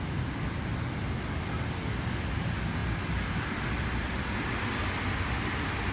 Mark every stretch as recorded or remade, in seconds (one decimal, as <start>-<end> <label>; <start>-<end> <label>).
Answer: 0.0-5.9 recorded